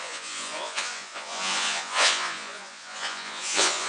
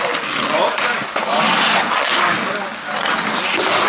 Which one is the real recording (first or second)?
second